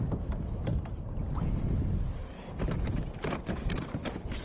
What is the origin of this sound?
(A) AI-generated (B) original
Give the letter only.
B